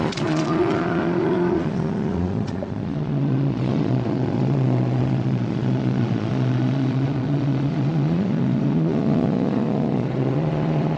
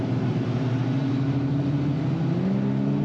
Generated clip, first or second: first